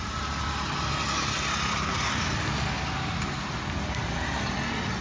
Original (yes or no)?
yes